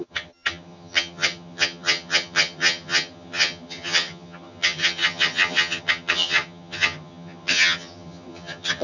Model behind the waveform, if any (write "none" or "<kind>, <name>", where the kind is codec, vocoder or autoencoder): vocoder, HiFi-GAN